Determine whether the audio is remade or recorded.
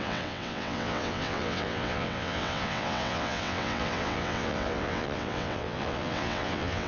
remade